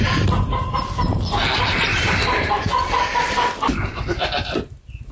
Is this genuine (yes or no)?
yes